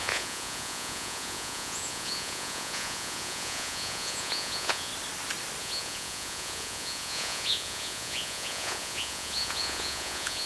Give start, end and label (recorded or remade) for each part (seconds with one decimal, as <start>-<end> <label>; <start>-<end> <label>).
0.0-4.9 remade; 4.9-5.6 recorded; 5.6-10.5 remade